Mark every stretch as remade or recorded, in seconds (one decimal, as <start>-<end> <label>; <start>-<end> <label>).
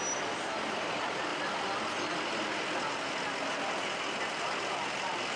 0.0-5.4 recorded